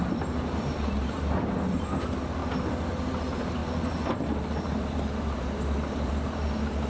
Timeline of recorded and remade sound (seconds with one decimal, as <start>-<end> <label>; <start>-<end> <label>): 0.0-2.4 remade; 2.4-2.9 recorded; 2.9-3.6 remade; 3.6-4.6 recorded; 4.6-6.9 remade